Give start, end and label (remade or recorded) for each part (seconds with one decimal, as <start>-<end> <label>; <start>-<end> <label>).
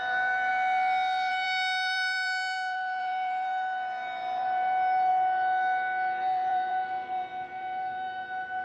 0.0-0.5 remade; 0.5-1.3 recorded; 1.3-5.1 remade; 5.1-6.2 recorded; 6.2-8.6 remade